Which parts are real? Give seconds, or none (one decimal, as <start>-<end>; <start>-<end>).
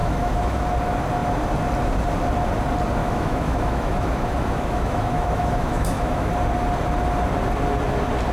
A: 0.6-3.0; 6.3-8.3